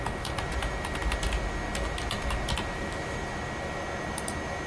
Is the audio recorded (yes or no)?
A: yes